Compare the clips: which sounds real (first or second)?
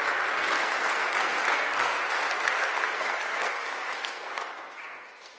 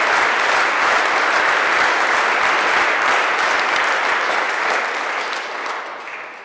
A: second